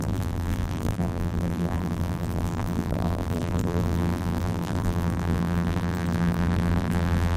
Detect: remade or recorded remade